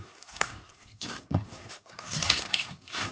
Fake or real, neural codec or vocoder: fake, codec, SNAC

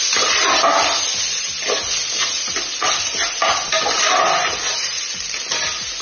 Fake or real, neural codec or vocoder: real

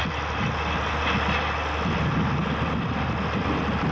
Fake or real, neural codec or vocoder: real